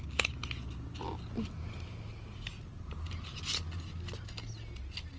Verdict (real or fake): real